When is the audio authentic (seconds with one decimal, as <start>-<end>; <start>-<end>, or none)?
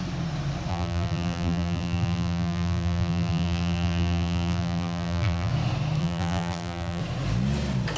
0.0-0.7; 5.5-6.0; 7.0-8.0